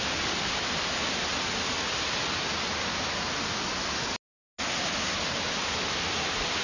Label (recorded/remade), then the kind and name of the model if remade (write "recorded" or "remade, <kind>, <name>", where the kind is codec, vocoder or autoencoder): recorded